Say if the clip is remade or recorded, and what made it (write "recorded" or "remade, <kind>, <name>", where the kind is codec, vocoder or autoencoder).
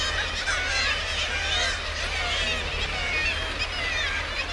recorded